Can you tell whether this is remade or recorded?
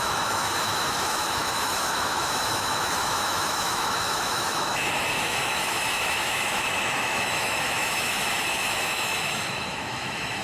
remade